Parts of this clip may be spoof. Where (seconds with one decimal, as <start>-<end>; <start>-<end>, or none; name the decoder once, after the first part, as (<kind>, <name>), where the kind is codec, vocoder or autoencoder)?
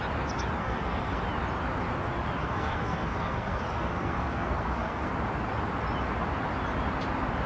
0.6-1.2 (codec, SNAC); 2.4-5.1